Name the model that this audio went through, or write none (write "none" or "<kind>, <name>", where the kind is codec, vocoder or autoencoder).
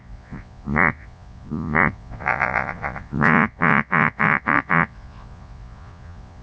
vocoder, Vocos